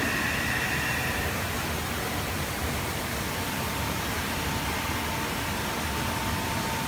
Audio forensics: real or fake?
real